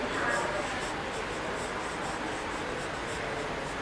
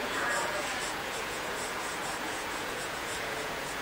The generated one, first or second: second